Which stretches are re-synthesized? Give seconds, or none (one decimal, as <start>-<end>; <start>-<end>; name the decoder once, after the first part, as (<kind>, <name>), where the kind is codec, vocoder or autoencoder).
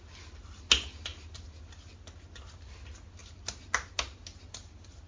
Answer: none